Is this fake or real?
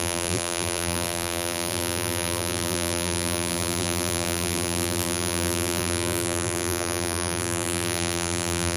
fake